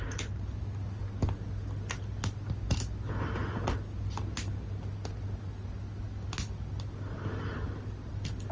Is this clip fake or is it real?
real